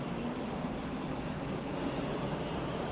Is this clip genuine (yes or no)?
yes